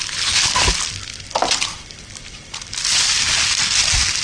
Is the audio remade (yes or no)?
no